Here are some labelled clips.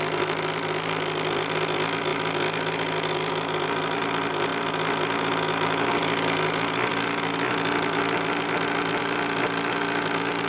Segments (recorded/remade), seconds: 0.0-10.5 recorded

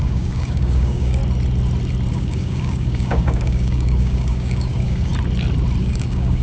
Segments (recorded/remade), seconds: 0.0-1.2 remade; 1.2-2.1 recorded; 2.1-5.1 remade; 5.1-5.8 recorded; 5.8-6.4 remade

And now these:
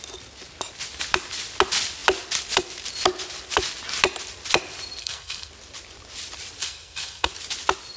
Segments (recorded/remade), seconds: 0.0-5.0 recorded; 5.0-5.5 remade; 5.5-6.6 recorded; 6.6-7.3 remade; 7.3-8.0 recorded

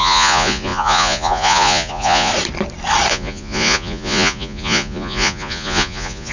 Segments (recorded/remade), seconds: 0.0-2.3 remade; 2.3-3.1 recorded; 3.1-6.3 remade

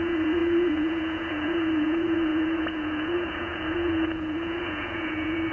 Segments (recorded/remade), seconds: 0.0-5.5 remade

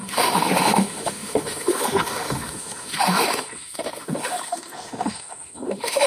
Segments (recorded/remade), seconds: 0.0-6.1 remade

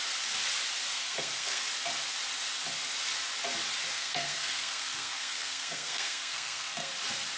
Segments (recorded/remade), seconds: 0.0-0.9 recorded; 0.9-1.7 remade; 1.7-3.9 recorded; 3.9-6.9 remade; 6.9-7.4 recorded